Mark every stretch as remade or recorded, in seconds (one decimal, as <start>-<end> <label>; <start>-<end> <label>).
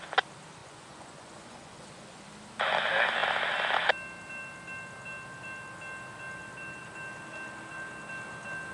0.0-0.6 recorded; 0.6-2.2 remade; 2.2-8.7 recorded